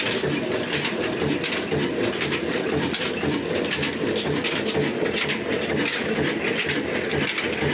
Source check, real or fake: real